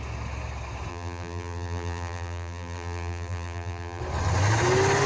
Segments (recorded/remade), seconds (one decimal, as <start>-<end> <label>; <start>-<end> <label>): 0.0-0.9 recorded; 0.9-4.0 remade; 4.0-5.1 recorded